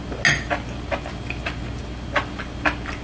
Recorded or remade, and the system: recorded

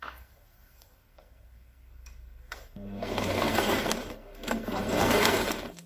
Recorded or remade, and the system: remade, codec, SNAC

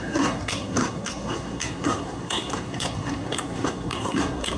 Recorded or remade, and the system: remade, codec, SNAC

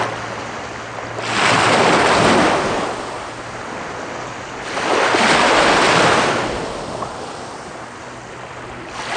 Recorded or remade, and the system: recorded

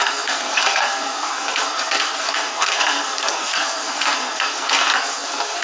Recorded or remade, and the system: remade, codec, SNAC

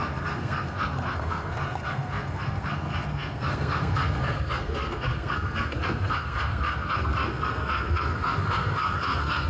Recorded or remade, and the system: remade, codec, SNAC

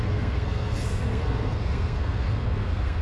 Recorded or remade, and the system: remade, codec, SNAC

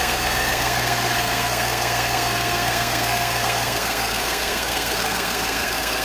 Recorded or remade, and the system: remade, codec, SNAC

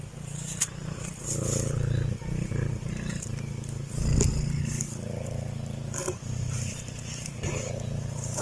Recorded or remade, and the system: recorded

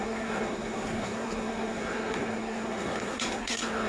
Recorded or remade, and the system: remade, codec, SNAC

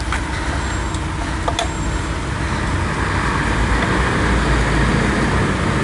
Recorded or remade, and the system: recorded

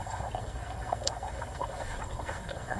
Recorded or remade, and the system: remade, codec, SNAC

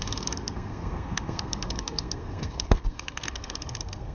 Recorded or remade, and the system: remade, codec, SNAC